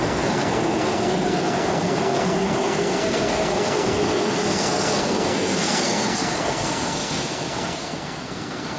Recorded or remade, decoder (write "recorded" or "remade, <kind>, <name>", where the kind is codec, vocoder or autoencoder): remade, codec, SNAC